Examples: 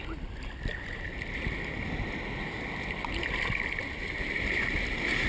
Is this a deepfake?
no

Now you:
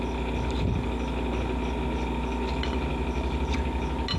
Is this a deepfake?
no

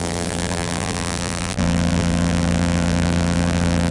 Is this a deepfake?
yes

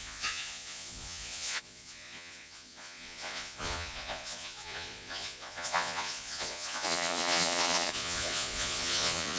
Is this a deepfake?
yes